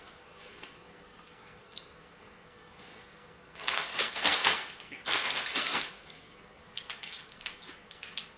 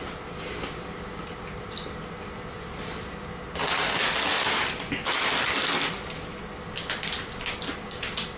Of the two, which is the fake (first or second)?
first